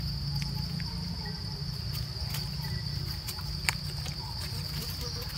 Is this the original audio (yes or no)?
yes